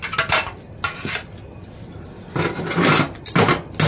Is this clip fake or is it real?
real